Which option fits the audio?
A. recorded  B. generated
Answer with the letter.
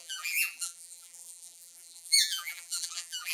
B